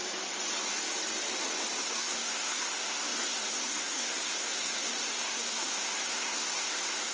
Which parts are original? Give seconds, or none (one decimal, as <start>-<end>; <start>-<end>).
0.0-1.8